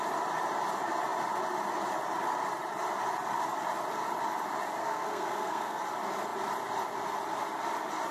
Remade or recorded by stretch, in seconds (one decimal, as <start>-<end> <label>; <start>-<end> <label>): 0.0-4.8 recorded; 4.8-5.8 remade; 5.8-8.1 recorded